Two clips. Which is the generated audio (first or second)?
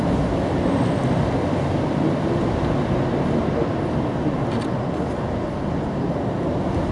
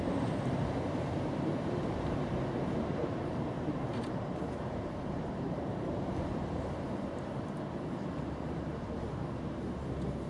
second